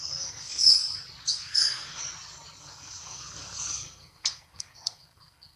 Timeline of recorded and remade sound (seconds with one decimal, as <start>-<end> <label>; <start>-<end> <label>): 0.0-0.8 remade; 0.8-1.3 recorded; 1.3-2.0 remade; 2.0-2.6 recorded; 2.6-5.6 remade